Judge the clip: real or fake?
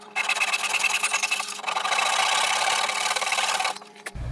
fake